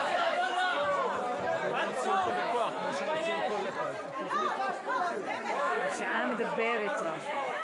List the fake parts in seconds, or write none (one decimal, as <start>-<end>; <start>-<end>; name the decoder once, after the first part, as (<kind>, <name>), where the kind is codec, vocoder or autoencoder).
0.0-0.7 (autoencoder, DAC-VAE); 2.3-3.6; 5.5-7.6